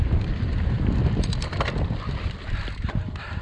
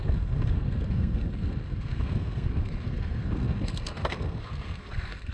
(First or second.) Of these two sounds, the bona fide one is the first